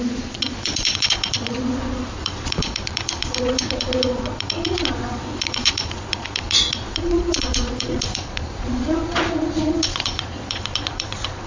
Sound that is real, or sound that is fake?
fake